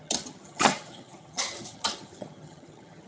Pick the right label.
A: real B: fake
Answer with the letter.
B